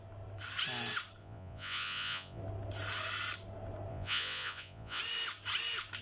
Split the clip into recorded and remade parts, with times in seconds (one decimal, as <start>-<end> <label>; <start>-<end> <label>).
0.0-1.2 recorded; 1.2-2.4 remade; 2.4-3.9 recorded; 3.9-5.0 remade; 5.0-6.0 recorded

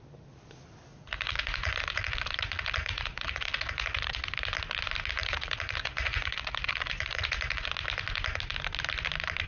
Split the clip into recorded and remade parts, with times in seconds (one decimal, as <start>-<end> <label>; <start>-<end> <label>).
0.0-0.9 recorded; 0.9-4.2 remade; 4.2-5.2 recorded; 5.2-7.7 remade; 7.7-9.5 recorded

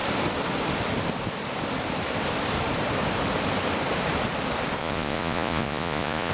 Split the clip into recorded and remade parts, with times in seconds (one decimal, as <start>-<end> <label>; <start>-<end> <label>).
0.0-4.8 recorded; 4.8-6.3 remade

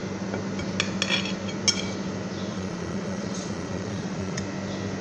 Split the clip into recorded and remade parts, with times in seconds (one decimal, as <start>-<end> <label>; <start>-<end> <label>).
0.0-2.5 recorded; 2.5-4.4 remade; 4.4-5.0 recorded

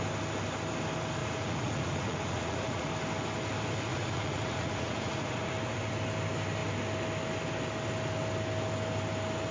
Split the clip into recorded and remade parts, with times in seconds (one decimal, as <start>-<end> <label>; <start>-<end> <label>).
0.0-1.2 recorded; 1.2-2.9 remade; 2.9-3.9 recorded; 3.9-5.5 remade; 5.5-9.5 recorded

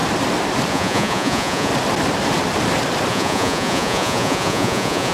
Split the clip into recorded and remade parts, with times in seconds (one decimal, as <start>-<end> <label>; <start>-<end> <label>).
0.0-0.7 recorded; 0.7-1.7 remade; 1.7-3.1 recorded; 3.1-5.1 remade

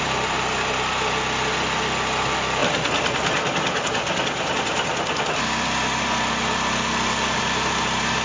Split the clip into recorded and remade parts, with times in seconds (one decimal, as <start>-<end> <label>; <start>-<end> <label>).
0.0-8.2 recorded